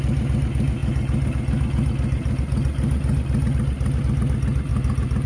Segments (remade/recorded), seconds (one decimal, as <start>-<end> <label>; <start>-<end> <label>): 0.0-5.3 recorded